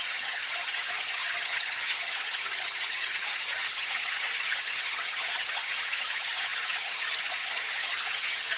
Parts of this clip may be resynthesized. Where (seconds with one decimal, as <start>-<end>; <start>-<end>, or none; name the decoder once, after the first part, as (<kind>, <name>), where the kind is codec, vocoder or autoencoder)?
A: 0.0-8.6 (vocoder, HiFi-GAN)